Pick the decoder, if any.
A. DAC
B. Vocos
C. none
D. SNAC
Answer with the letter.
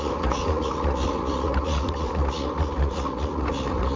B